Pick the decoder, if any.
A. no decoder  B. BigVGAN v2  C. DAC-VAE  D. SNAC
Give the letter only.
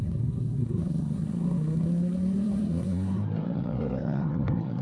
D